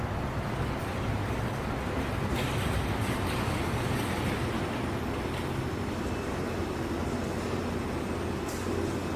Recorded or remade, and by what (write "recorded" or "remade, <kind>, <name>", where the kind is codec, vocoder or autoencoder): recorded